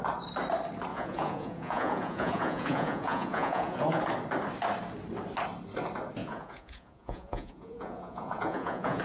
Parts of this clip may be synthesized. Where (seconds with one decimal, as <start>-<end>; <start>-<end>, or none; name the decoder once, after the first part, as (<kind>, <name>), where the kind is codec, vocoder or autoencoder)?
0.9-4.0 (vocoder, Vocos); 6.2-9.0